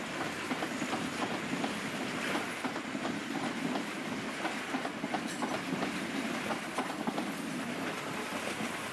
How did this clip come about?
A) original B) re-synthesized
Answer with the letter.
A